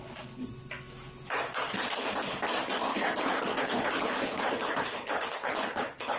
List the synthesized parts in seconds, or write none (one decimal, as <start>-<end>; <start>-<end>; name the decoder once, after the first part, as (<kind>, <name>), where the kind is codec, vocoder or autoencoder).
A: 2.9-6.2 (codec, HILCodec)